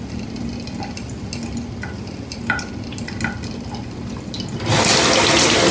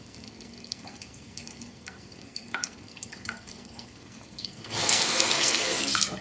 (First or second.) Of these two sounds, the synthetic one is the second